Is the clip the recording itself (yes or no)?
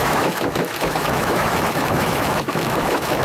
no